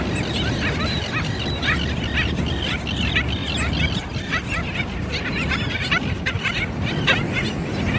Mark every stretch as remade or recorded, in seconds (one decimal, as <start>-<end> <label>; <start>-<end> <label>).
0.0-8.0 recorded